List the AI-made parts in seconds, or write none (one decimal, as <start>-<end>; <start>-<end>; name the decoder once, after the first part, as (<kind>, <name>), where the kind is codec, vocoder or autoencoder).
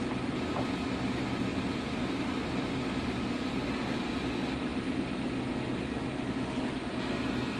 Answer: none